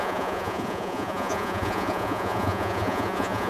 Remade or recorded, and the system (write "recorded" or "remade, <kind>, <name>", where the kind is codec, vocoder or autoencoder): remade, vocoder, Vocos